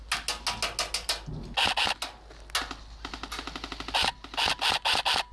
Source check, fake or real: real